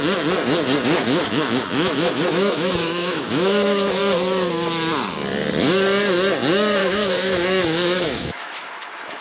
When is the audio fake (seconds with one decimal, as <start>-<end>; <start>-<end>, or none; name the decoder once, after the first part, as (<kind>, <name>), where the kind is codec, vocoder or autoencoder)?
1.0-4.0 (autoencoder, DAC-VAE); 6.8-9.2